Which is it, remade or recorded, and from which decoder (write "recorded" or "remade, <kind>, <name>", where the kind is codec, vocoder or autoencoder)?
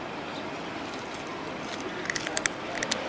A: recorded